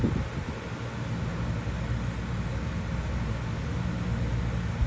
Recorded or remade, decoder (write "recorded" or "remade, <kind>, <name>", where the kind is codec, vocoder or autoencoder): recorded